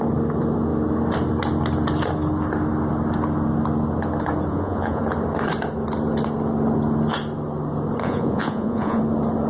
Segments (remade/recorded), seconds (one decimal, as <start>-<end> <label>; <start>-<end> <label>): 0.0-4.5 recorded; 4.5-5.0 remade; 5.0-8.0 recorded; 8.0-9.0 remade; 9.0-9.5 recorded